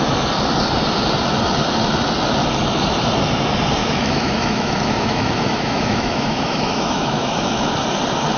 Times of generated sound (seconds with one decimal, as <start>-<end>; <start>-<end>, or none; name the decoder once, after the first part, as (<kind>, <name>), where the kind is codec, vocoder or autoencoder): 3.8-7.7 (autoencoder, DAC-VAE)

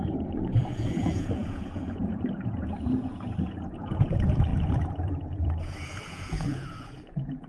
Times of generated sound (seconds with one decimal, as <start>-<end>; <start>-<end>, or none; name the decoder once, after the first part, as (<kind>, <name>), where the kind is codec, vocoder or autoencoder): 0.0-7.5 (vocoder, Vocos)